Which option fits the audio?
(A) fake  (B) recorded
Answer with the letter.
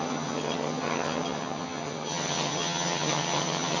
A